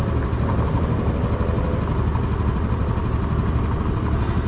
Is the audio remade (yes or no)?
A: no